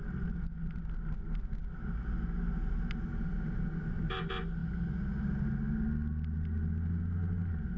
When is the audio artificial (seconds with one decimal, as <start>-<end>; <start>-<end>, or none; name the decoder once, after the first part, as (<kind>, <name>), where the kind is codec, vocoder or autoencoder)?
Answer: none